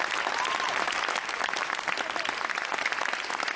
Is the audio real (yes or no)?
yes